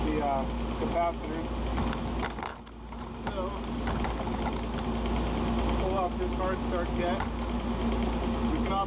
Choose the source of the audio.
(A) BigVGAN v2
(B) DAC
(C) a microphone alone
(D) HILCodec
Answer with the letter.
C